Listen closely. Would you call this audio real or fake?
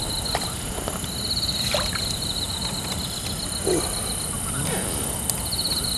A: real